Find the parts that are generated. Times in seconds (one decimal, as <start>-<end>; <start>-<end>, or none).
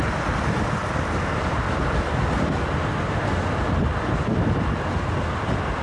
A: none